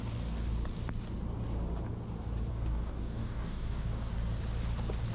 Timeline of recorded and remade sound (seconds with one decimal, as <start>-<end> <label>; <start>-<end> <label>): 0.0-2.5 recorded; 2.5-4.1 remade; 4.1-5.1 recorded